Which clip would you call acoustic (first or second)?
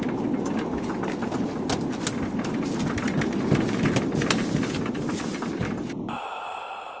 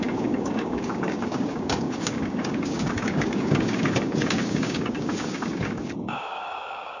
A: first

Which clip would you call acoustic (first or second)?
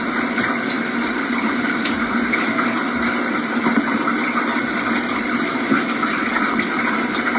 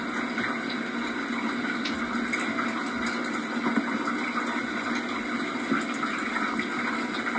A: second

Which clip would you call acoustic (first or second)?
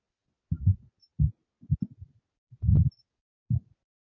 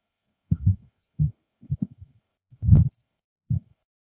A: first